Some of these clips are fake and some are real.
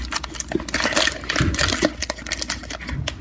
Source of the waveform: real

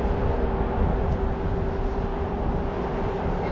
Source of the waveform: real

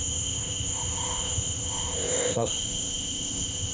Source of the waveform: fake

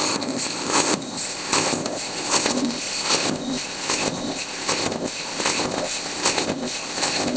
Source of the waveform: fake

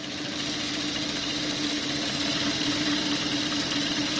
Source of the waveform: real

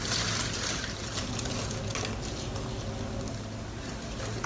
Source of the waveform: real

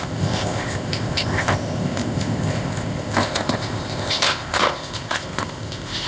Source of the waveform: fake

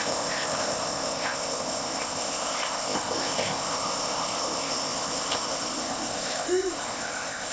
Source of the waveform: fake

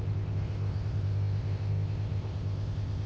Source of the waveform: fake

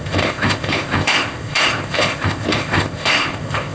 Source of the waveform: fake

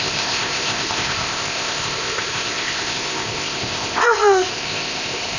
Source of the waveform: fake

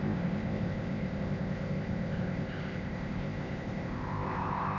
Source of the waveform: fake